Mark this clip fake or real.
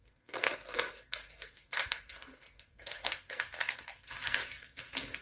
fake